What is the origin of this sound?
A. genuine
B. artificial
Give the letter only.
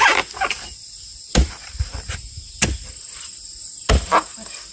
A